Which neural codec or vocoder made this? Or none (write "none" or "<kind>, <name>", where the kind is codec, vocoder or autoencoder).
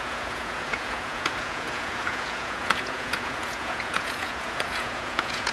vocoder, Vocos